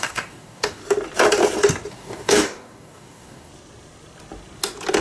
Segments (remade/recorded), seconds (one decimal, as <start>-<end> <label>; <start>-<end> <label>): 0.0-0.8 remade; 0.8-1.9 recorded; 1.9-3.5 remade; 3.5-5.0 recorded